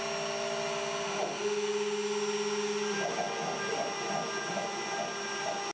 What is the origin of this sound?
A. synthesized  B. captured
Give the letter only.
B